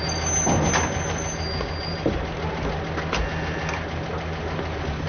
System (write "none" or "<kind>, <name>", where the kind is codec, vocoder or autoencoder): none